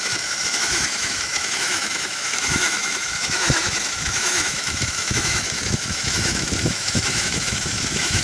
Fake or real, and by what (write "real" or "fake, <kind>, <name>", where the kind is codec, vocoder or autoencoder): fake, autoencoder, DAC-VAE